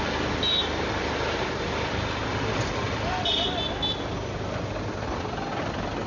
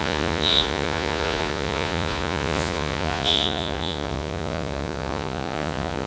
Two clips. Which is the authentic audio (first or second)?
first